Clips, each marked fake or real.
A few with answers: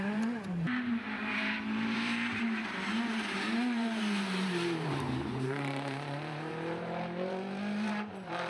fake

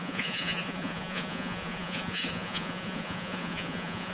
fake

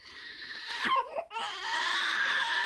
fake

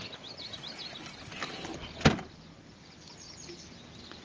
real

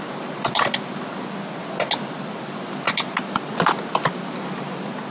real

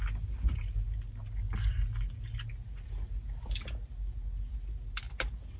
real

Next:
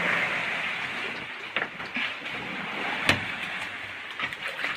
real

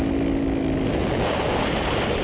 real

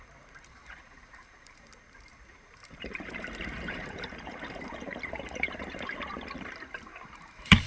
fake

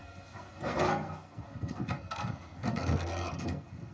fake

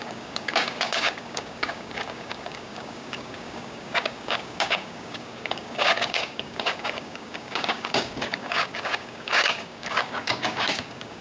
fake